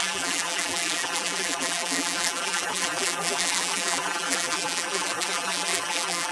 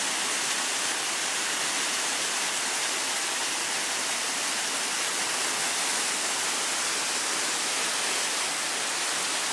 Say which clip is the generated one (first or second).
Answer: first